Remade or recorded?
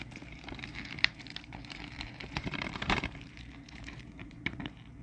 remade